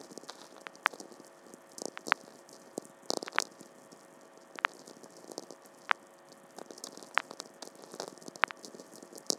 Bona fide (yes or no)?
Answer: yes